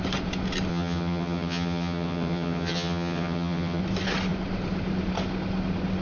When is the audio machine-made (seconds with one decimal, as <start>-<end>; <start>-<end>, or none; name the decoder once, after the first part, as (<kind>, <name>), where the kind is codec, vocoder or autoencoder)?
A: 0.7-3.8 (vocoder, HiFi-GAN)